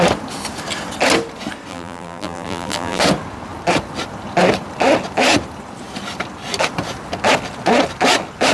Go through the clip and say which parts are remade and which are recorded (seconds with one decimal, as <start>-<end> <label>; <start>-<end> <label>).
0.0-1.7 recorded; 1.7-3.0 remade; 3.0-8.5 recorded